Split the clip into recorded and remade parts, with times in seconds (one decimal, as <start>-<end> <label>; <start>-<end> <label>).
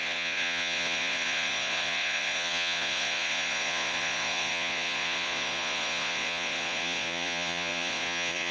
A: 0.0-8.5 remade